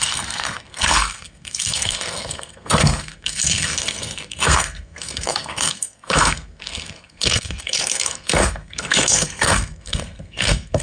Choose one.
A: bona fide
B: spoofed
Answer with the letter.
B